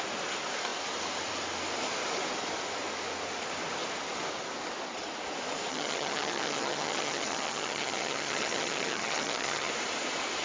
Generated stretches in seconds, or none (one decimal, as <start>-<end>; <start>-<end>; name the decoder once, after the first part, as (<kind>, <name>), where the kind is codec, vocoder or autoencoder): 5.7-9.7 (vocoder, HiFi-GAN)